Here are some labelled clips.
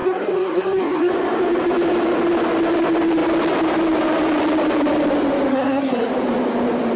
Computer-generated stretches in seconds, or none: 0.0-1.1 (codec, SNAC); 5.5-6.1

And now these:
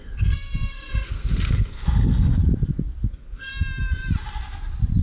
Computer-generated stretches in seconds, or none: 0.0-2.4 (codec, SNAC); 3.1-3.5

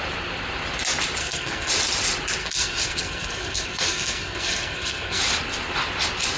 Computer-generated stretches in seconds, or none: 1.2-1.7 (codec, SNAC); 2.4-5.2

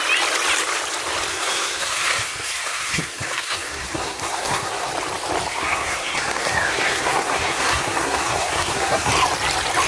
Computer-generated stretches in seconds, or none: 1.3-4.9 (codec, SNAC); 5.5-9.1